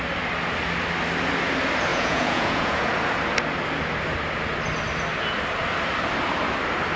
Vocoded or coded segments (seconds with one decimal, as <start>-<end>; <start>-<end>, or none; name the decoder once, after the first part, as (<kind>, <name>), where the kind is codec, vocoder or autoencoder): 1.9-2.9 (vocoder, Vocos)